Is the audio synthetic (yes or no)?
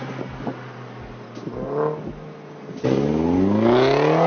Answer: no